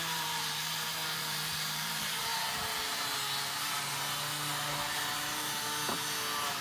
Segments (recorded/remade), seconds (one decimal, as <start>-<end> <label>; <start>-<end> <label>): 0.0-2.3 remade; 2.3-6.6 recorded